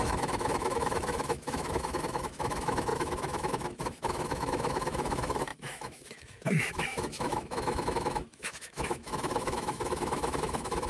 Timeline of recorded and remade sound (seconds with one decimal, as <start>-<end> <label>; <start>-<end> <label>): 0.0-10.9 remade

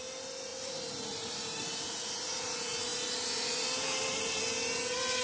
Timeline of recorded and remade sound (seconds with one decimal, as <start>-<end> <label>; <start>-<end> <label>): 0.0-5.2 recorded

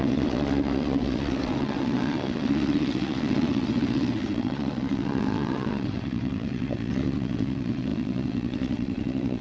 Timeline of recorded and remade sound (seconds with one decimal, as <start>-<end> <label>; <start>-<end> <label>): 0.0-9.4 remade

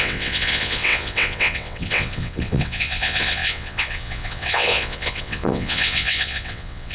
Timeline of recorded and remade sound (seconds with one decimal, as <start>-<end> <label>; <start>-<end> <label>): 0.0-6.9 remade